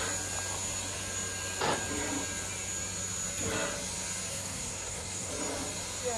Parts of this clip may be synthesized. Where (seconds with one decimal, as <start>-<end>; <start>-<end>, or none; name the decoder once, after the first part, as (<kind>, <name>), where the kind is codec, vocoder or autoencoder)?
4.3-5.3 (codec, SNAC)